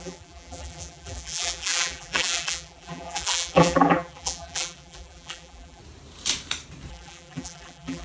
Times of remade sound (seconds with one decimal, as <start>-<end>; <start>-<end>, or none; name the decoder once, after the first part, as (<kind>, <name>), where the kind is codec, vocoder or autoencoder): 0.0-5.8 (vocoder, BigVGAN v2); 6.9-8.0